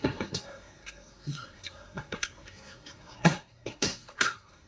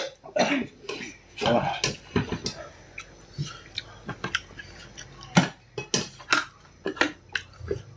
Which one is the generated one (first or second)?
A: first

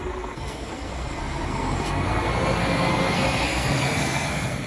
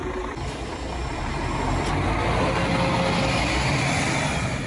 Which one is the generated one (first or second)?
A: first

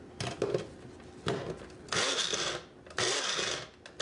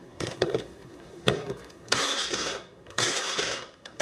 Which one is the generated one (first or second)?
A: second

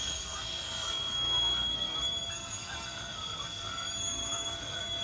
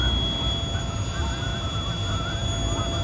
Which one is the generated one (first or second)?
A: first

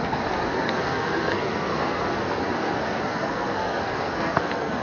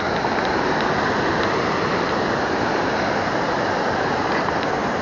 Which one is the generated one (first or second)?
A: first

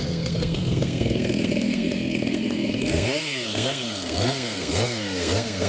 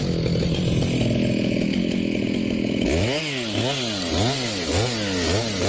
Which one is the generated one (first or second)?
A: first